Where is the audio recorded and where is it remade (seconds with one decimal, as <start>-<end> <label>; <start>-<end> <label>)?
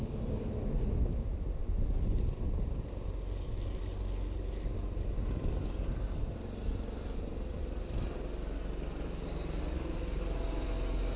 0.0-11.2 recorded